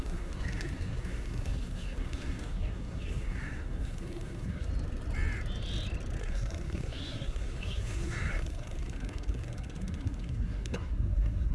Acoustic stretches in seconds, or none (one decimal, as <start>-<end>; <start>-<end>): 4.7-6.2